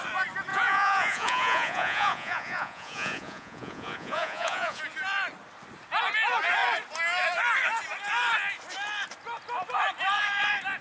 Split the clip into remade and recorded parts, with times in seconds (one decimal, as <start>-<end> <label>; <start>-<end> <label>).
0.0-0.5 recorded; 0.5-4.8 remade; 4.8-10.8 recorded